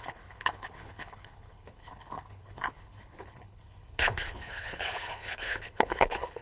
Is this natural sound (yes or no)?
no